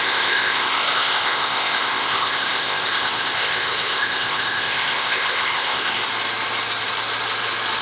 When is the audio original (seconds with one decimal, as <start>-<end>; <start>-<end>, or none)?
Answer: 6.0-7.8